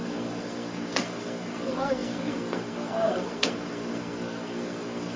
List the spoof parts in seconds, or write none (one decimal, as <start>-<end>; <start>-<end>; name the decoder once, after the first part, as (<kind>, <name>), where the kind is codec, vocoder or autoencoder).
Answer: 0.0-5.2 (codec, SNAC)